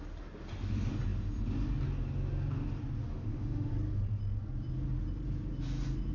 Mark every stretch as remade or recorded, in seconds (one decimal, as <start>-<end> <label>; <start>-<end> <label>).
0.0-3.1 recorded; 3.1-3.7 remade; 3.7-6.1 recorded